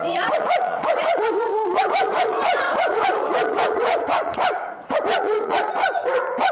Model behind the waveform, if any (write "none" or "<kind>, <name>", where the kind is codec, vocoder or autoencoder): vocoder, Vocos